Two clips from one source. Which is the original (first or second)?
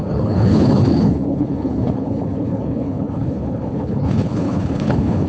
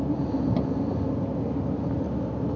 second